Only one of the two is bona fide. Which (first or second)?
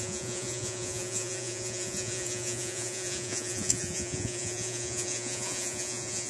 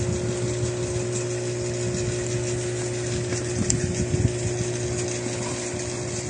second